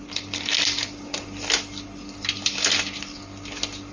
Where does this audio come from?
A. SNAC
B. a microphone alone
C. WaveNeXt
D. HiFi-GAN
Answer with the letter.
B